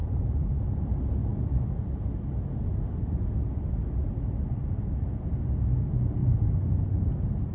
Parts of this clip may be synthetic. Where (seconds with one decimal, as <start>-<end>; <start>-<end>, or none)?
0.0-0.6; 6.2-7.1

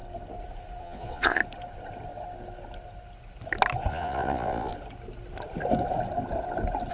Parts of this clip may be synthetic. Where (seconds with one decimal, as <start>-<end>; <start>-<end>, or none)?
0.8-1.4; 3.9-4.7